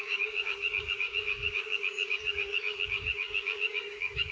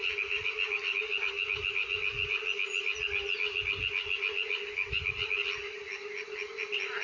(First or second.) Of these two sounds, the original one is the second